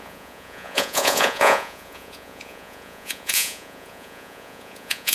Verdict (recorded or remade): remade